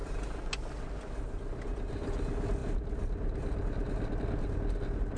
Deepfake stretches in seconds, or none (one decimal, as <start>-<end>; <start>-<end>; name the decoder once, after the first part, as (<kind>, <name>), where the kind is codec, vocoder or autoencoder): none